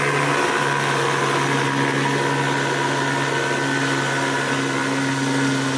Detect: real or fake real